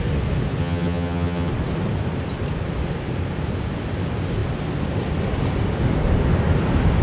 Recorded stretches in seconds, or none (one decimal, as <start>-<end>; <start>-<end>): 0.0-0.6; 1.5-7.0